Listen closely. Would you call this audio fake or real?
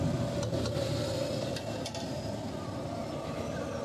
real